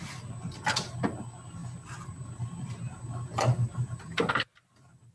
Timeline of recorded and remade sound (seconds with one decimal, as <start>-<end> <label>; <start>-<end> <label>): 0.0-5.1 recorded

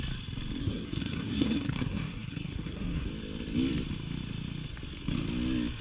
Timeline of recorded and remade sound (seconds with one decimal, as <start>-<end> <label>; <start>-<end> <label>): 0.0-0.6 recorded; 0.6-3.1 remade; 3.1-5.8 recorded

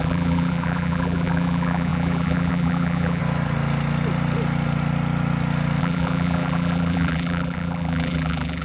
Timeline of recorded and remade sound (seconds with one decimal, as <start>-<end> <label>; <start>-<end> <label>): 0.0-3.2 remade; 3.2-5.8 recorded; 5.8-8.6 remade

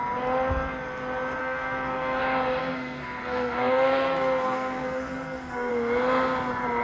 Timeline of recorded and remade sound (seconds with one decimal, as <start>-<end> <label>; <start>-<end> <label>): 0.0-1.4 recorded; 1.4-2.2 remade; 2.2-2.6 recorded; 2.6-5.7 remade; 5.7-6.8 recorded